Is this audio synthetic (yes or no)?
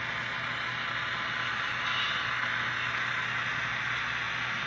no